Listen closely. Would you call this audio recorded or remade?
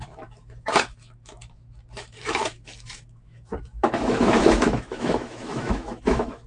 remade